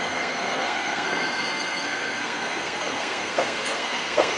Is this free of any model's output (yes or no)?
no